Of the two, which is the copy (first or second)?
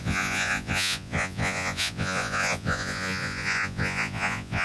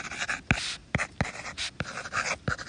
first